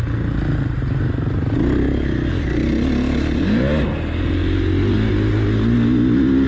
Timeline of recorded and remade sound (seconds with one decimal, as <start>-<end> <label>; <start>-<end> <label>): 0.0-6.5 recorded